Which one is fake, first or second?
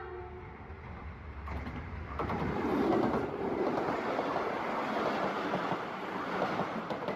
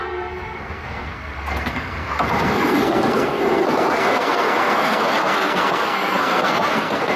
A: second